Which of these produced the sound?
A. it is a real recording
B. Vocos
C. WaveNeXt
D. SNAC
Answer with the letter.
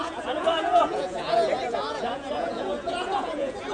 B